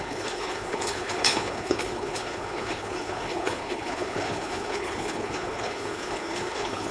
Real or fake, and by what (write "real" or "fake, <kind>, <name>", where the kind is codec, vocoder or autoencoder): fake, codec, HILCodec